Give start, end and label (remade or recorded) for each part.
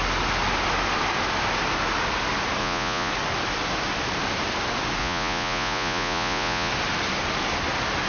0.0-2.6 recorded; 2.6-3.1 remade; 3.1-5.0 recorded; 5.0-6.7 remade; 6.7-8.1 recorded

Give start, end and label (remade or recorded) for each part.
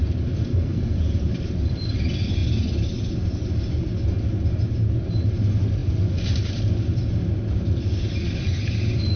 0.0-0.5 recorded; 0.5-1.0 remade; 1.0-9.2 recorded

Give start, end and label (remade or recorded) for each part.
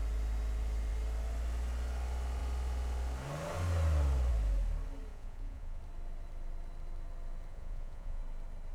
0.0-5.1 recorded; 5.1-5.8 remade; 5.8-7.5 recorded; 7.5-8.2 remade; 8.2-8.7 recorded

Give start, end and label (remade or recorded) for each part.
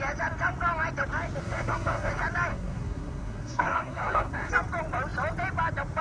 0.0-1.4 recorded; 1.4-2.1 remade; 2.1-2.5 recorded; 2.5-4.5 remade; 4.5-6.0 recorded